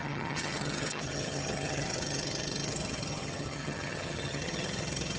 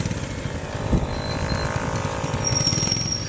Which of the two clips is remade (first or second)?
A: first